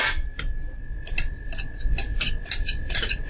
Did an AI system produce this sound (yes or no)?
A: no